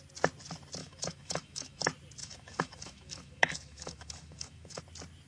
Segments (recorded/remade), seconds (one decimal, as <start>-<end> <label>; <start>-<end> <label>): 0.0-0.8 recorded; 0.8-1.8 remade; 1.8-2.2 recorded; 2.2-4.8 remade; 4.8-5.3 recorded